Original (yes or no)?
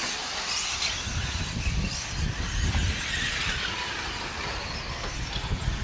yes